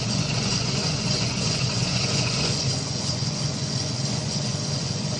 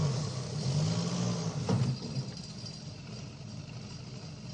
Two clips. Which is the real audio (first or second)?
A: second